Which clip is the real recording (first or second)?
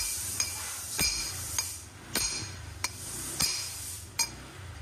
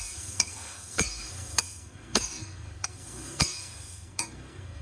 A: first